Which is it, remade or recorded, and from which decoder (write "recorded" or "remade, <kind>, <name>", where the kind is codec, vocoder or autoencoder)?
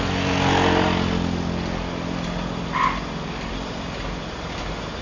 recorded